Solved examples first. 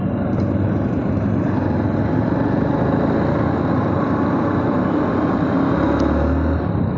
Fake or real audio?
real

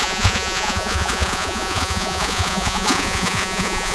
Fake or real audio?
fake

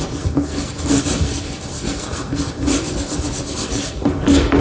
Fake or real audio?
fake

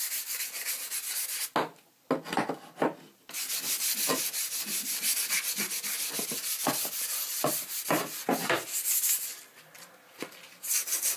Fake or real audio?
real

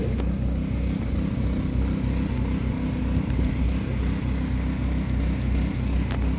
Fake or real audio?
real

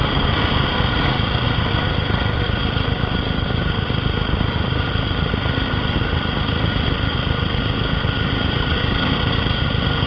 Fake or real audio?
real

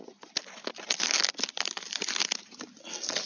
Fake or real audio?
real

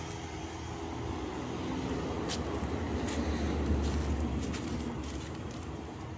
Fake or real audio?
real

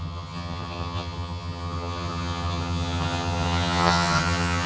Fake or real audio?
fake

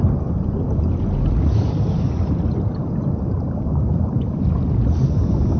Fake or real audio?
real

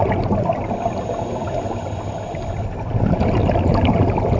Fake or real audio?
real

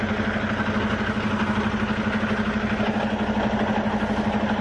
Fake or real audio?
real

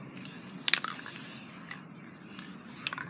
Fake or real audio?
real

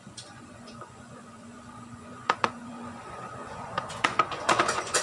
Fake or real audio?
fake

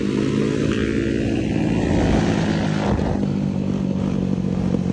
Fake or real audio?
real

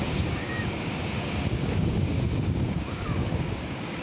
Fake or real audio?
fake